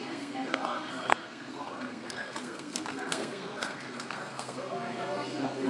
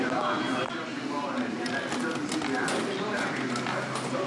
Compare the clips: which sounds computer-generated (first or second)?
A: first